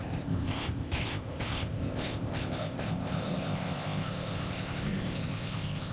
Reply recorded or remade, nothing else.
remade